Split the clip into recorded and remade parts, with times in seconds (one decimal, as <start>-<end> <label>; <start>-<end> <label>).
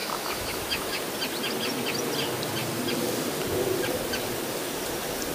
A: 0.0-1.0 remade; 1.0-5.3 recorded